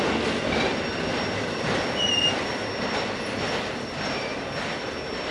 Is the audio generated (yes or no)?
no